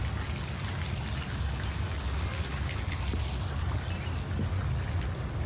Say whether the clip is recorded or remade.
recorded